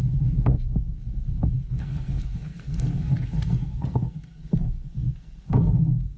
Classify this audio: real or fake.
fake